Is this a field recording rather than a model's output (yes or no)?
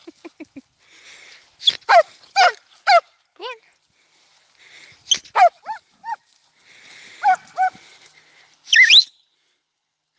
yes